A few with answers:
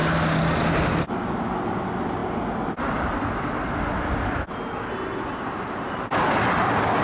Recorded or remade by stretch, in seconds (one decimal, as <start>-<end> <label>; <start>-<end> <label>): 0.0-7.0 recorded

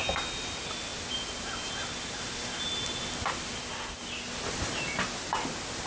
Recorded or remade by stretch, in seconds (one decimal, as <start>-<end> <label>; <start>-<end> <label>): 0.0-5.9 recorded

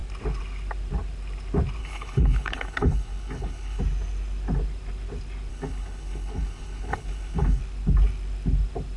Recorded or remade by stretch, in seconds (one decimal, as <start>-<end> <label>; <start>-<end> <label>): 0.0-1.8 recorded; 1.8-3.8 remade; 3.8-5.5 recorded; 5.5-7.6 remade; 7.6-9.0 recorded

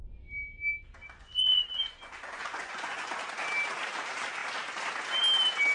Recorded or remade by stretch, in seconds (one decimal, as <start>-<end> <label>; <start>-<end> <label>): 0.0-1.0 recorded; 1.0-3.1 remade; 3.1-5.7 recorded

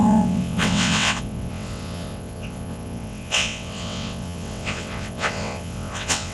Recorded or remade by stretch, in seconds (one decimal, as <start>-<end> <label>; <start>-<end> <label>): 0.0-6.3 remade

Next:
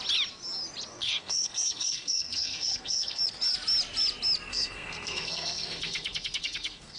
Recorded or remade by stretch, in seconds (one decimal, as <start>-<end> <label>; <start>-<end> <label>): 0.0-0.9 recorded; 0.9-3.2 remade; 3.2-4.5 recorded; 4.5-7.0 remade

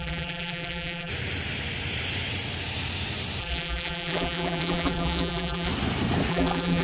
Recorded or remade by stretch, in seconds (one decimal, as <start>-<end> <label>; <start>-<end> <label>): 0.0-1.1 remade; 1.1-3.4 recorded; 3.4-5.7 remade; 5.7-6.3 recorded; 6.3-6.8 remade

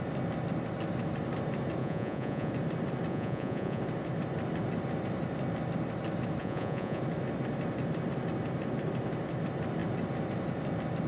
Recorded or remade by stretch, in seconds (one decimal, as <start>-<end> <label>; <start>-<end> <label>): 0.0-1.8 recorded; 1.8-2.5 remade; 2.5-3.1 recorded; 3.1-3.8 remade; 3.8-6.4 recorded; 6.4-7.0 remade; 7.0-11.1 recorded